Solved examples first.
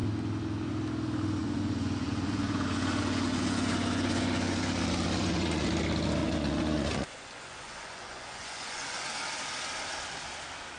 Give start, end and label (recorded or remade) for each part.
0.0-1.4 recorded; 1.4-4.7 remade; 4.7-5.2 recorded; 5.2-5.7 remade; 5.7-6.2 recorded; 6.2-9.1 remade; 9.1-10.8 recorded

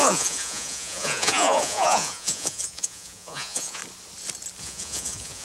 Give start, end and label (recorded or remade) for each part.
0.0-3.8 remade; 3.8-4.6 recorded; 4.6-5.4 remade

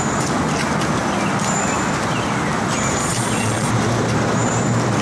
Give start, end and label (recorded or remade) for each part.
0.0-3.0 recorded; 3.0-3.7 remade; 3.7-5.0 recorded

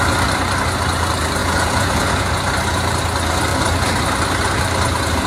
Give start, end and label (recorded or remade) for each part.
0.0-1.4 recorded; 1.4-2.3 remade; 2.3-5.3 recorded